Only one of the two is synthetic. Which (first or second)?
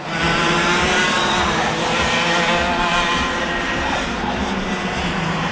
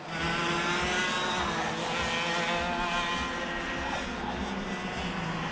first